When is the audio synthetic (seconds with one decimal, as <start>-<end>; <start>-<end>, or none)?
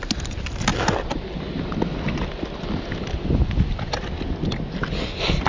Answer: 0.7-3.5